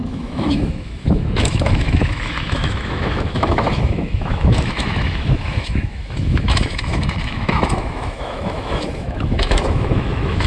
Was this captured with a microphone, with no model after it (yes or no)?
no